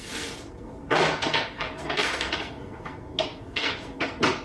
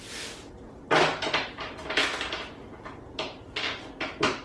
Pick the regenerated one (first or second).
first